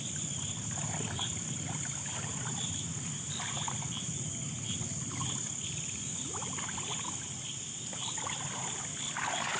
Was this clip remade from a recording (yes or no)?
no